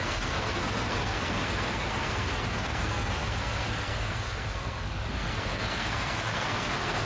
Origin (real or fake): fake